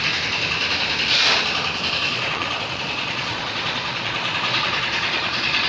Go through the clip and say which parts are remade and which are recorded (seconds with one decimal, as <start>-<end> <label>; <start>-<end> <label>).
0.0-2.1 recorded; 2.1-5.7 remade